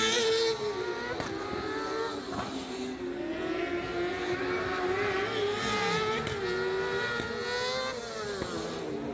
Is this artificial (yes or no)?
no